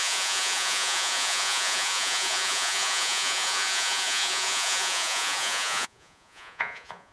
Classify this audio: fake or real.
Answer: fake